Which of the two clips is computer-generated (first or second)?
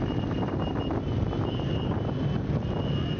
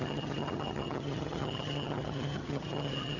second